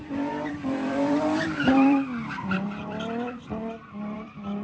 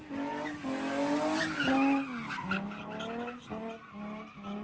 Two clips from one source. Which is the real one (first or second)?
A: second